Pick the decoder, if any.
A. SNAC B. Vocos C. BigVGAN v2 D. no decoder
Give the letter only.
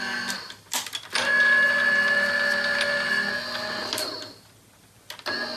D